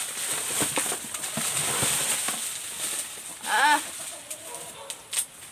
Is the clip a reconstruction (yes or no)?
no